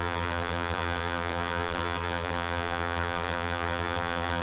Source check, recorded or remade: remade